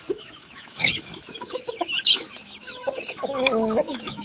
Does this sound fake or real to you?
fake